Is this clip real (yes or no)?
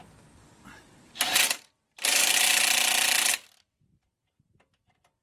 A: no